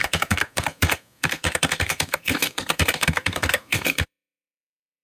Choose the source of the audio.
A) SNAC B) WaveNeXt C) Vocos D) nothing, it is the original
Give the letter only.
A